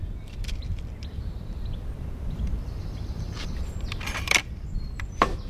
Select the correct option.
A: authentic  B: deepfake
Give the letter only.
B